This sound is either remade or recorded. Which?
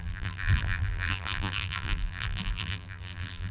remade